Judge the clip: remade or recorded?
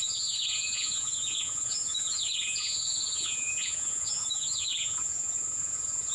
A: remade